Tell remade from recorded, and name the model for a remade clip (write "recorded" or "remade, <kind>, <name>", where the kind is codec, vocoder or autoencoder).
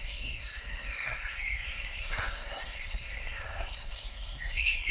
remade, codec, SNAC